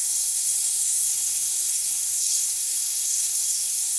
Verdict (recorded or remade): remade